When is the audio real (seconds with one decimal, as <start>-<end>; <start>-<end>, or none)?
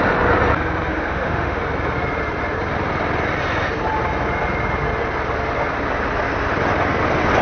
0.0-0.9; 1.6-7.4